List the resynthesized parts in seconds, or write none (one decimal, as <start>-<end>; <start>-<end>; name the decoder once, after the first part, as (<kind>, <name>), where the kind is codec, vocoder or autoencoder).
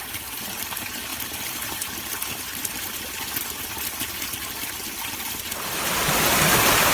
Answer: none